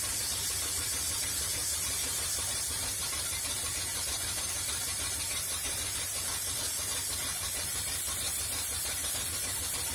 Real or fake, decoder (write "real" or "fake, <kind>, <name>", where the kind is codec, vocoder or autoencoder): fake, vocoder, BigVGAN v2